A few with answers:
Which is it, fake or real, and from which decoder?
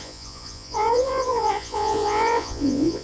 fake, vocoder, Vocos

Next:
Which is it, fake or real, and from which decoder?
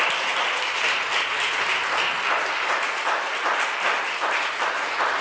real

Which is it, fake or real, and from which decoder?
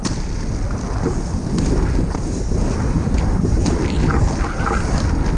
real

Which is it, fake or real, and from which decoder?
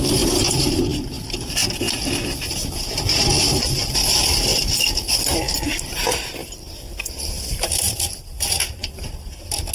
real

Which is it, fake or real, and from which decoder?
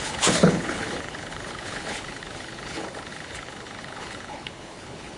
fake, codec, HILCodec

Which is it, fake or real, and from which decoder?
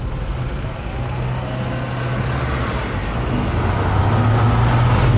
real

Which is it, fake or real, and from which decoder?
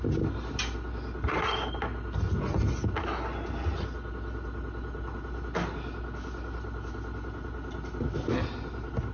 real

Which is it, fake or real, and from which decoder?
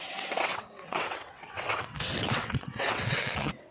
fake, vocoder, WaveNeXt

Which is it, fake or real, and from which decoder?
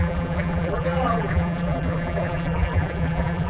fake, vocoder, BigVGAN v2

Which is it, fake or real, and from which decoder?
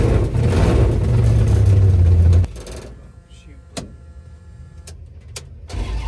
real